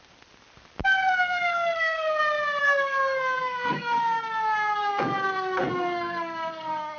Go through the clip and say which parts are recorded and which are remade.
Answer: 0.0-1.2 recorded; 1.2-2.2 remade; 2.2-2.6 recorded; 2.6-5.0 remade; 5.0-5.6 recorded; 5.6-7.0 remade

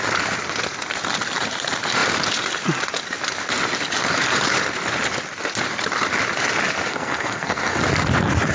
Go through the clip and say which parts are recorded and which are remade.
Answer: 0.0-6.9 recorded; 6.9-7.8 remade; 7.8-8.5 recorded

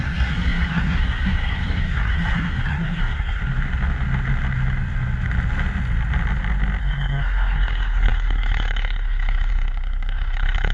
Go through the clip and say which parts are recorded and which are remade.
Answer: 0.0-3.4 remade; 3.4-6.8 recorded; 6.8-10.7 remade

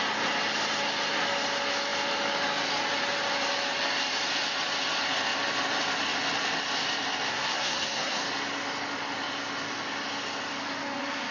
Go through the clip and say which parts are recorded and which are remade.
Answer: 0.0-7.3 recorded; 7.3-8.2 remade; 8.2-11.3 recorded